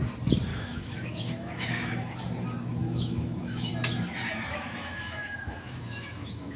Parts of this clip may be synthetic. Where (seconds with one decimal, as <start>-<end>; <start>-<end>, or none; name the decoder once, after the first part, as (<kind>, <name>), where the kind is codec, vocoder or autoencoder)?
0.5-2.2 (autoencoder, DAC-VAE); 2.8-3.7; 4.5-6.6